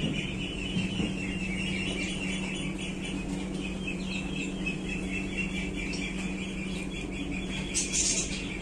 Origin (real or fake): real